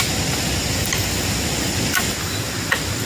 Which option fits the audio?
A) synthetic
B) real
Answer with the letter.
B